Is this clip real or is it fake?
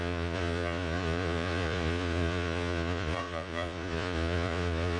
fake